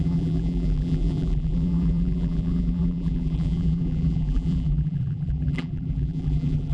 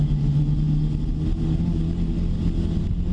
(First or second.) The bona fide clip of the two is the second